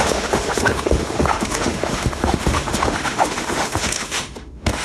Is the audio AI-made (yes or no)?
yes